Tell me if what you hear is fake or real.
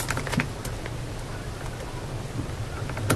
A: real